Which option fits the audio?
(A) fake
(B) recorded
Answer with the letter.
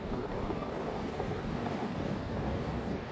A